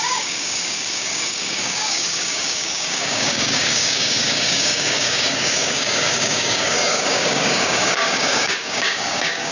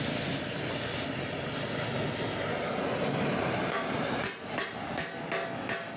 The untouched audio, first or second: second